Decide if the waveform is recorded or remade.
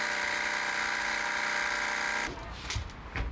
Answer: recorded